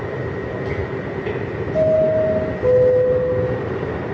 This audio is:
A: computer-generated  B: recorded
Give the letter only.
B